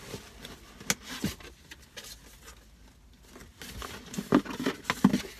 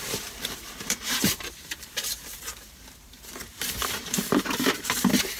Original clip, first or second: first